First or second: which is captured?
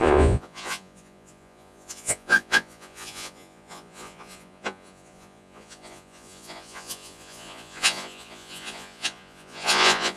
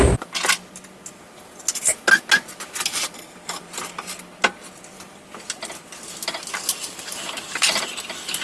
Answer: second